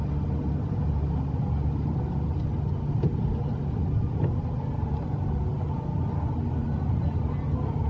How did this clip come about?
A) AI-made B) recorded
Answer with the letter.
B